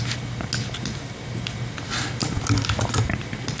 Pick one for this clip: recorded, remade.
recorded